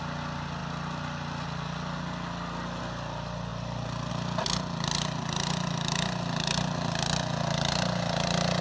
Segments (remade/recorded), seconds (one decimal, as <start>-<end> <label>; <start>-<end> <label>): 0.0-8.6 recorded